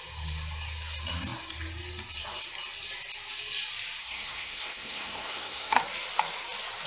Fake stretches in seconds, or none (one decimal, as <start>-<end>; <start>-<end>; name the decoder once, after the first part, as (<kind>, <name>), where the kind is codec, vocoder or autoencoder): 4.0-5.8 (codec, SNAC)

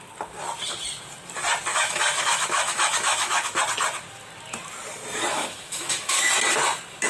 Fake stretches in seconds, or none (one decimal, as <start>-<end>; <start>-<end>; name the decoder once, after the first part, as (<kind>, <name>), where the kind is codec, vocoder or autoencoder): 1.7-3.6 (autoencoder, DAC-VAE); 5.3-6.3

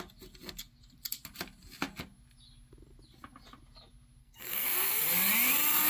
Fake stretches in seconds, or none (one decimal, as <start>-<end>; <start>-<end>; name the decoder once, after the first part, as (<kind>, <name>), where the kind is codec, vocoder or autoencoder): 4.2-5.1 (codec, SNAC)

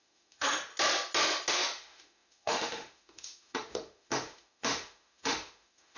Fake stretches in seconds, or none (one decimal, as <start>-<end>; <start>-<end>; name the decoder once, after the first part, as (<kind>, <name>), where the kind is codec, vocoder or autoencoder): 0.0-0.7 (autoencoder, DAC-VAE); 1.5-6.0